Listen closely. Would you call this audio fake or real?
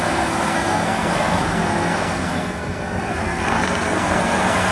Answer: fake